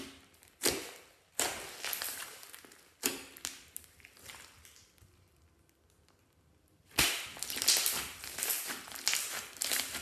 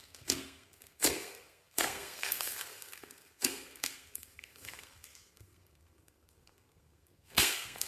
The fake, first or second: second